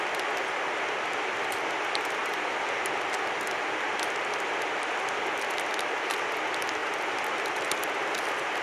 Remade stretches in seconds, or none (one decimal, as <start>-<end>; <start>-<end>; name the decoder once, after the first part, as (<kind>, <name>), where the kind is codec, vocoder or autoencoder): none